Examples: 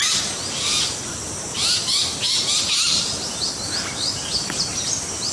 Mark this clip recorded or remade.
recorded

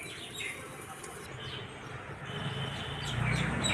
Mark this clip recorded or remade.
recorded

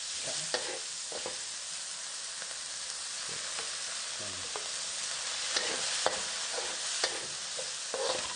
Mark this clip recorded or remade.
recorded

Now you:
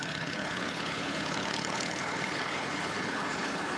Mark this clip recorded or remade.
remade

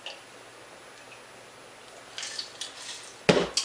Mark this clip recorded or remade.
recorded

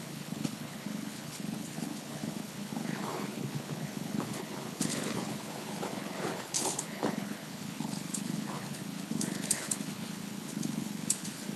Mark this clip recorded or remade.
remade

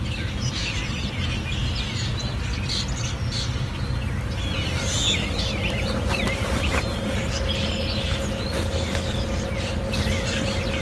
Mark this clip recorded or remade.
recorded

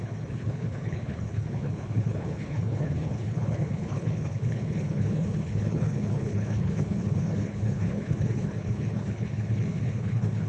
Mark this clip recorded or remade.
remade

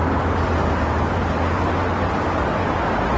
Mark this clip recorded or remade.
recorded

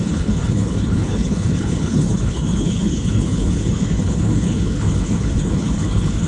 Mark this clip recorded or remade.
remade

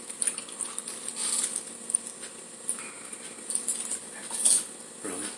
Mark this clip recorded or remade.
recorded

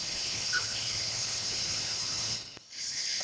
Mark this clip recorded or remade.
remade